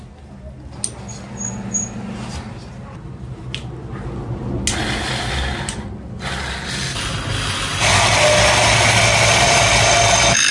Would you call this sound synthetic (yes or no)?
no